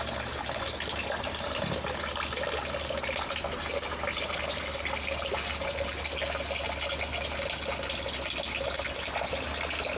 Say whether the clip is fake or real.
real